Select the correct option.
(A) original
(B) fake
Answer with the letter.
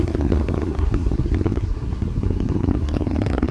B